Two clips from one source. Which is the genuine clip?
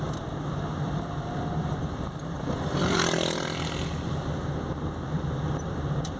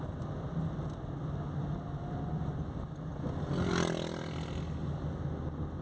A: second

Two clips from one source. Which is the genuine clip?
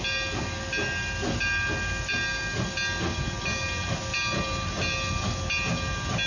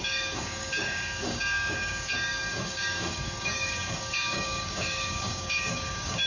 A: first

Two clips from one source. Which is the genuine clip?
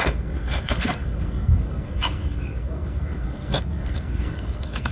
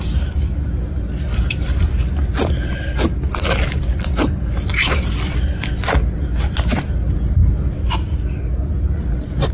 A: second